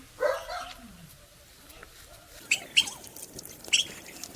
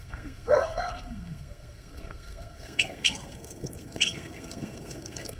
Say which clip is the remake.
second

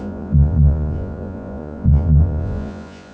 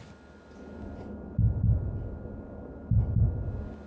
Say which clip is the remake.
first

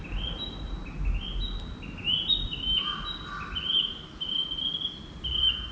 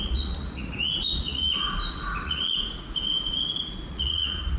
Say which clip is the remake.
second